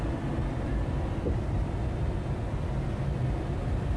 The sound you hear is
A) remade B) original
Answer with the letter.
B